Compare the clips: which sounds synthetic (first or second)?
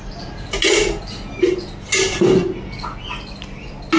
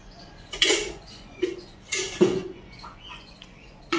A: second